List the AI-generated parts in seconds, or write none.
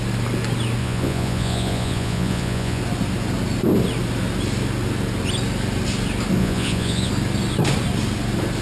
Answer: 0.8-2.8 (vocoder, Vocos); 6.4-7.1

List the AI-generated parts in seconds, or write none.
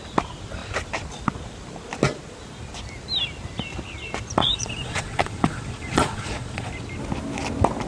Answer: 4.4-6.7 (vocoder, Vocos)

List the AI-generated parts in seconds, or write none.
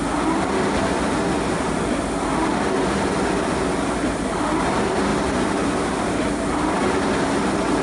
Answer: none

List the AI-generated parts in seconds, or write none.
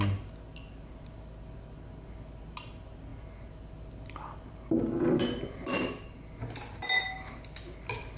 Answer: none